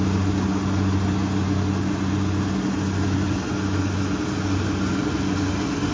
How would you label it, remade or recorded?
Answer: recorded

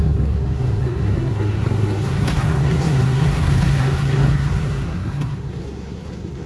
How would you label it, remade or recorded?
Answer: remade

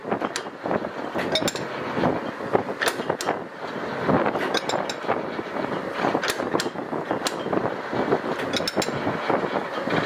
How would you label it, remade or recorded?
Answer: recorded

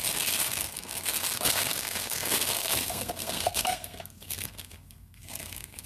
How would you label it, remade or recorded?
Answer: remade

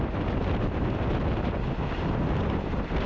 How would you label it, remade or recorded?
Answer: recorded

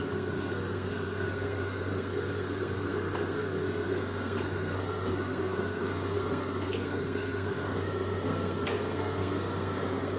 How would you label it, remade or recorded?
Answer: remade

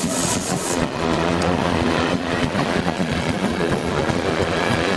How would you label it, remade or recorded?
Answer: remade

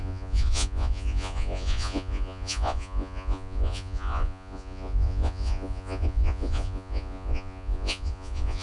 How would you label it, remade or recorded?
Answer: remade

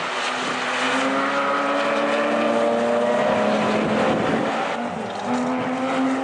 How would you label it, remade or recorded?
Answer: recorded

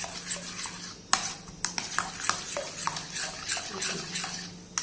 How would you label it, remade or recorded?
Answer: recorded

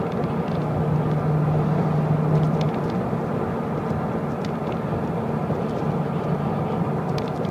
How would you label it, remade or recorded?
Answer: recorded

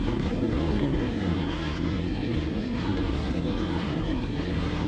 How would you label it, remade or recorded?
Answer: remade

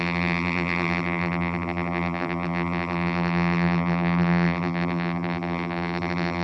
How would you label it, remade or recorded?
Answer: remade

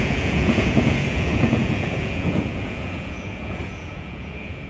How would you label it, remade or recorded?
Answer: remade